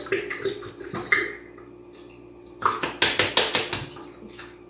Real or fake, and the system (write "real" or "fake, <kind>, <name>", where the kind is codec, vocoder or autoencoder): real